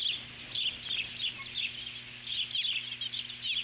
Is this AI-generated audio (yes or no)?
no